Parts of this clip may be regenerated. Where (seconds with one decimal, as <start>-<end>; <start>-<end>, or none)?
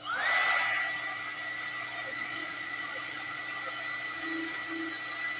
2.1-3.4